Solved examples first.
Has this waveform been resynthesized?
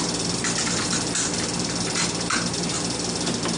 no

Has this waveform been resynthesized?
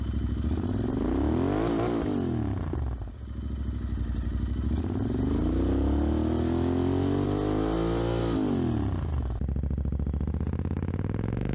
no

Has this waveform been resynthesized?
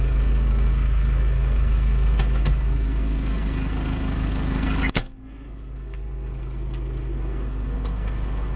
yes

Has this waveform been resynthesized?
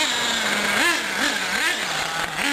no